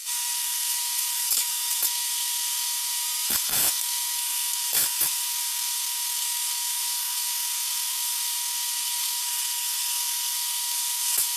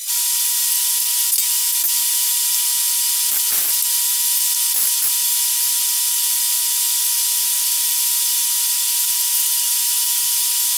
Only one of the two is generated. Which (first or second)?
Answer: first